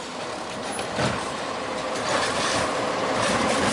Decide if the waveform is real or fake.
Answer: real